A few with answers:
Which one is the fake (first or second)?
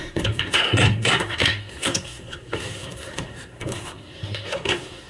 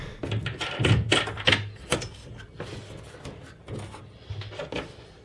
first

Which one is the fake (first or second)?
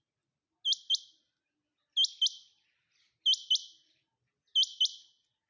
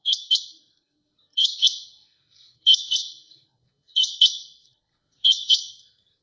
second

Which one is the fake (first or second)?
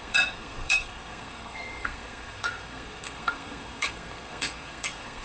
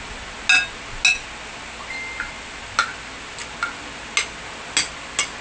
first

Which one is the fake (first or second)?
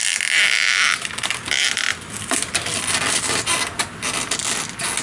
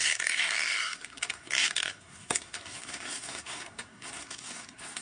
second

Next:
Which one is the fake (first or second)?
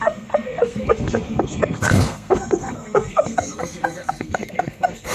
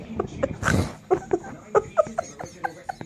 first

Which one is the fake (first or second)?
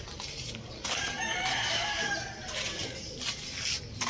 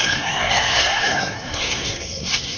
second